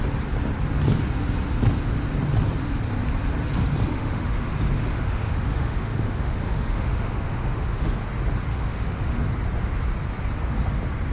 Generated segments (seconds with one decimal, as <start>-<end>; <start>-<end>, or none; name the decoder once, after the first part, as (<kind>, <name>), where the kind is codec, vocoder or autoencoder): 3.9-4.5 (autoencoder, DAC-VAE); 4.9-8.0; 8.5-9.2